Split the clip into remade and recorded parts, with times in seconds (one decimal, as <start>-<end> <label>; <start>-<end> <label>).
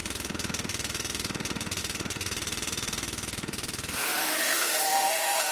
0.0-5.5 remade